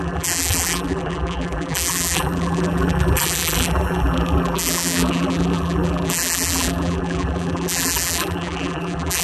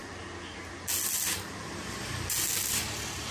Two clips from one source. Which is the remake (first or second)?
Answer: first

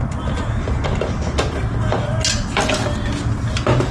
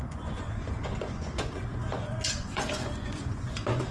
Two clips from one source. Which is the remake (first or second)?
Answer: second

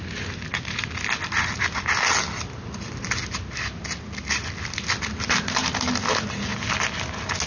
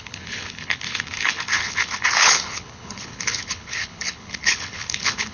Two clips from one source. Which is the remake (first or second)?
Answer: second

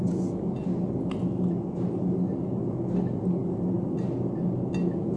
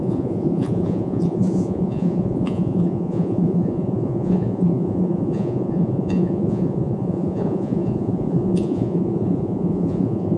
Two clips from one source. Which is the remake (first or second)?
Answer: second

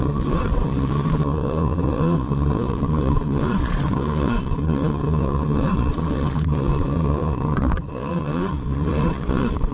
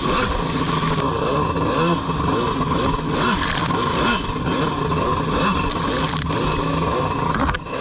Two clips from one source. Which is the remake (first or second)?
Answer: first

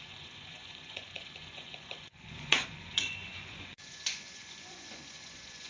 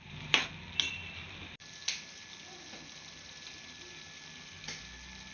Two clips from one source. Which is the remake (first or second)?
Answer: first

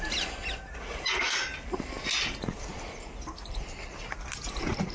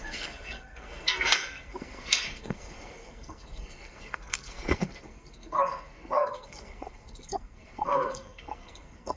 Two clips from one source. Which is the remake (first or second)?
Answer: second